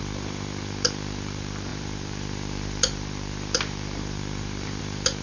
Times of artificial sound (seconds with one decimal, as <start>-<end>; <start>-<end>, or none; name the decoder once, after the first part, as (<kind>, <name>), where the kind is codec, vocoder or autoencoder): 0.0-5.2 (vocoder, BigVGAN v2)